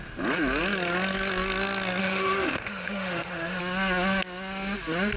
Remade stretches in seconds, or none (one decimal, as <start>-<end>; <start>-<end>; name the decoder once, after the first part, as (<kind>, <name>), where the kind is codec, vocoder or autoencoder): 2.0-3.6 (autoencoder, DAC-VAE)